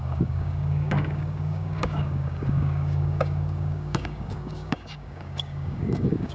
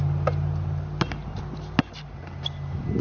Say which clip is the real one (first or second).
second